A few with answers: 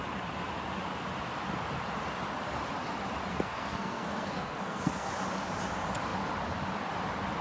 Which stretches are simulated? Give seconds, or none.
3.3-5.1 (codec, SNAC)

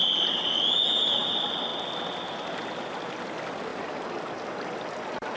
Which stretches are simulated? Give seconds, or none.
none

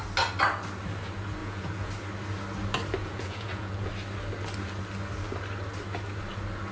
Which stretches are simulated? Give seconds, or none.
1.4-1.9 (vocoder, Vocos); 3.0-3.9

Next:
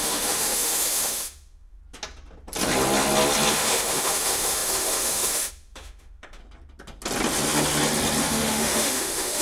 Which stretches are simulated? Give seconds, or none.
0.0-1.8 (autoencoder, DAC-VAE); 3.5-6.4; 8.2-9.4

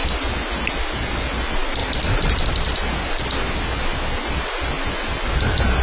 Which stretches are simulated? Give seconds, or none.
none

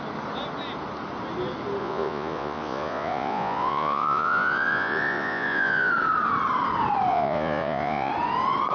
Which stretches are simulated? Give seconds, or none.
1.8-5.9 (vocoder, Vocos); 7.1-8.1

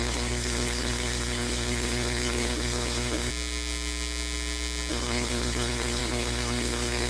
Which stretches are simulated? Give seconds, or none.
0.0-3.3 (codec, SNAC); 4.9-7.1

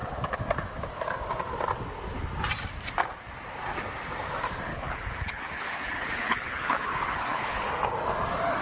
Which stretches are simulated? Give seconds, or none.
4.7-7.7 (codec, HILCodec)